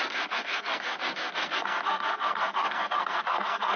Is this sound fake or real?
fake